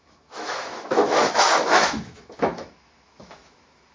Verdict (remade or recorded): remade